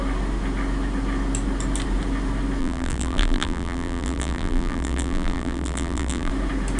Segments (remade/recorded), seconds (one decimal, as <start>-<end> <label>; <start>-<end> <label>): 0.0-2.6 recorded; 2.6-6.3 remade; 6.3-6.8 recorded